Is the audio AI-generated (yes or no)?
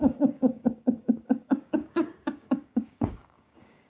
yes